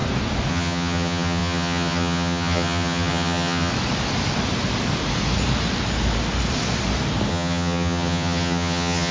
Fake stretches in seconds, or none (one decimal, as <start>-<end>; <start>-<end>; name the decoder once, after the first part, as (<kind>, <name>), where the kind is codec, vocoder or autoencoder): 0.5-3.7 (vocoder, HiFi-GAN); 7.3-9.1